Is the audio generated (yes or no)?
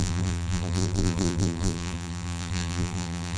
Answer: yes